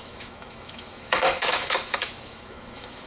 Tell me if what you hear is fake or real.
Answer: fake